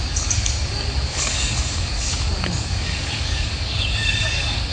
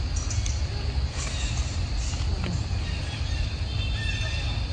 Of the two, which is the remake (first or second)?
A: first